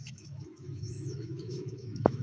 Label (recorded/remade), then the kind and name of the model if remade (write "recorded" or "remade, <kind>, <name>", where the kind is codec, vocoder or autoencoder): remade, autoencoder, DAC-VAE